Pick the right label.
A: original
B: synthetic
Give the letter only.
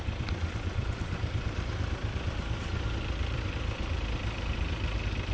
B